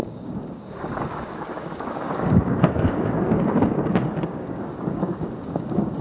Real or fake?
fake